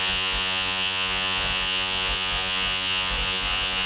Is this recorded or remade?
remade